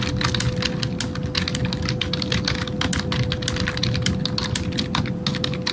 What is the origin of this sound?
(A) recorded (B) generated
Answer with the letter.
A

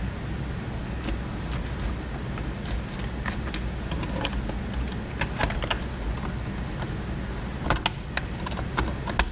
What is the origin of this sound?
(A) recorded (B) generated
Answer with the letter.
A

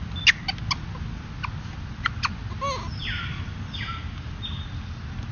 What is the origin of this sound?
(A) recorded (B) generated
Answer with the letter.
A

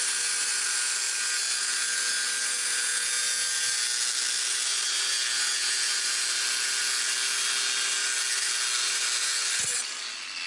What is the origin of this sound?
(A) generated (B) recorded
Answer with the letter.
B